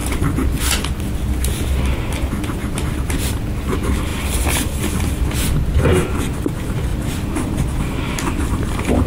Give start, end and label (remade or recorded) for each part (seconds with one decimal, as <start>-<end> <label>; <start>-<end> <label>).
0.0-0.6 remade; 0.6-2.6 recorded; 2.6-3.4 remade; 3.4-6.9 recorded; 6.9-9.1 remade